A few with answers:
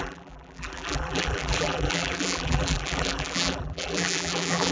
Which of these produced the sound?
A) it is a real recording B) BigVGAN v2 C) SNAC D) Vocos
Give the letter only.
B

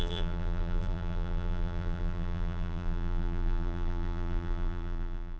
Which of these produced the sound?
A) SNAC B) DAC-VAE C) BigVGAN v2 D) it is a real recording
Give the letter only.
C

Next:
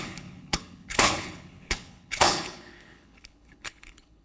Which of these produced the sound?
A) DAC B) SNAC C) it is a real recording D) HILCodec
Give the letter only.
D